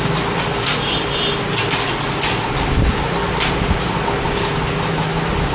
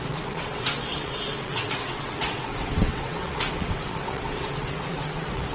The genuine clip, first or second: first